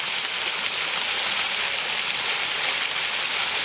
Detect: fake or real real